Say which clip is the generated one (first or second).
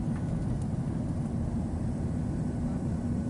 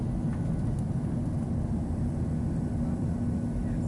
first